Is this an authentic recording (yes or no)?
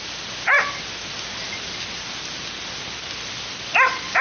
yes